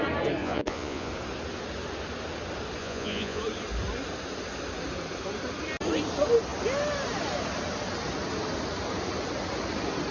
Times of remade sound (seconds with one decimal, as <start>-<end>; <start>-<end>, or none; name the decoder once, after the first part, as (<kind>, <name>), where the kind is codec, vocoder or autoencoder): 0.4-1.1 (vocoder, Vocos); 2.8-3.4

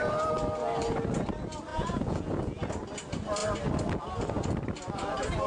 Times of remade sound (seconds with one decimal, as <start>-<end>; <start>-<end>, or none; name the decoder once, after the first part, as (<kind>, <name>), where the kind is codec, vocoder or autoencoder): 1.7-2.6 (vocoder, Vocos)